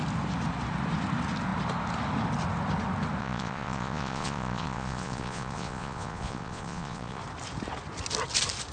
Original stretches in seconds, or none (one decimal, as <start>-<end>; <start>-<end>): 0.0-3.2; 7.2-8.7